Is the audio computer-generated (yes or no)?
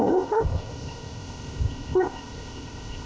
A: yes